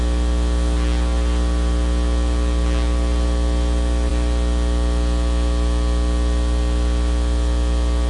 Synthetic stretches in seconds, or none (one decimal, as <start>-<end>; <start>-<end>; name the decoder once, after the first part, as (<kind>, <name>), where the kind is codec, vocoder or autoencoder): none